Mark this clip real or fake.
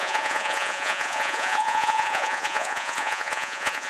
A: fake